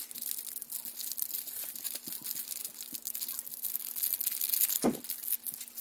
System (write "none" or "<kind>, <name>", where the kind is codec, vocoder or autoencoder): none